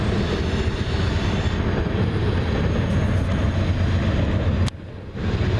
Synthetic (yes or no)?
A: no